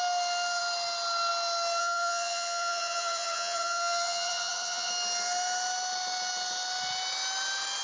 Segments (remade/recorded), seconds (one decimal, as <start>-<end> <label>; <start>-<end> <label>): 0.0-1.8 recorded; 1.8-4.9 remade; 4.9-7.8 recorded